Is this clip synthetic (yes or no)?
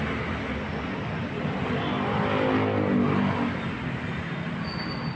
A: no